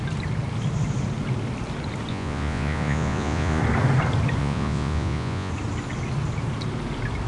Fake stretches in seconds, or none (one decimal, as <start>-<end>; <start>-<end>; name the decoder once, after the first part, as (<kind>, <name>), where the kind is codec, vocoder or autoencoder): 2.1-3.6 (vocoder, Vocos); 4.4-5.5